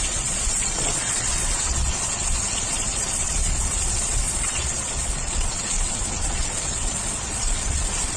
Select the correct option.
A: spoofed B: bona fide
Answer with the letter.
A